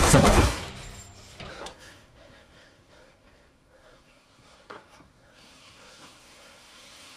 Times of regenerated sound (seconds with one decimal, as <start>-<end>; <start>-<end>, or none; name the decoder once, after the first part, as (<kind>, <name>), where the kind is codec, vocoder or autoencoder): 0.0-0.6 (codec, SNAC); 1.5-7.2